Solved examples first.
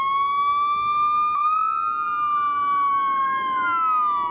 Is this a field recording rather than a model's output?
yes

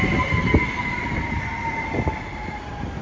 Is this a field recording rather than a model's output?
yes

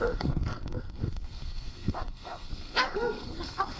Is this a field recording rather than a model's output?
no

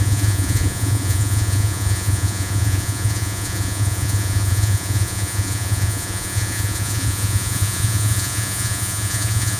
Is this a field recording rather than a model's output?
no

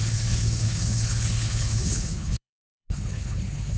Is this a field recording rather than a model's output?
no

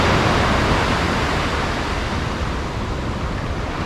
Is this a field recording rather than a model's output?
yes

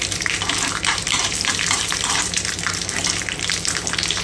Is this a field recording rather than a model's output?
no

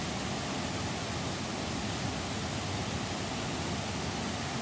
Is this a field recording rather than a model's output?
yes